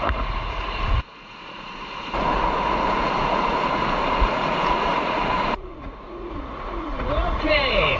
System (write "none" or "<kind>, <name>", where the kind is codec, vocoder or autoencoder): vocoder, Vocos